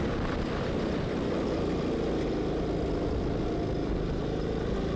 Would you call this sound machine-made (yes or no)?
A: no